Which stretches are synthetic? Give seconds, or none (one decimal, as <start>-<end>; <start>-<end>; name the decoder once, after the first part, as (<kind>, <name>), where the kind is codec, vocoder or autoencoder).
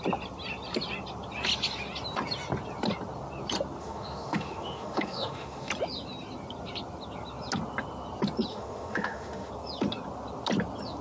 3.8-5.7 (autoencoder, DAC-VAE); 8.5-9.5